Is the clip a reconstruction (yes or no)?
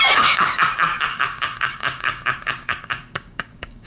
yes